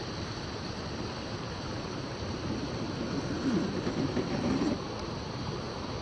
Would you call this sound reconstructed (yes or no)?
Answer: yes